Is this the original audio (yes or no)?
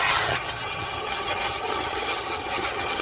no